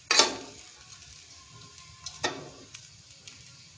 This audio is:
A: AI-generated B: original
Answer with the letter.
B